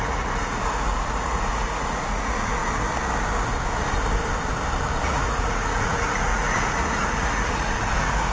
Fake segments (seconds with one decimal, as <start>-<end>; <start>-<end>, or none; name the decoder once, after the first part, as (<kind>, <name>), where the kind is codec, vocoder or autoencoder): 0.0-2.6 (vocoder, Vocos); 5.0-8.3